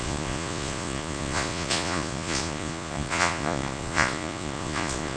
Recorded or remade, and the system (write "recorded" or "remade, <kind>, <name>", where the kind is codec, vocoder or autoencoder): remade, vocoder, Vocos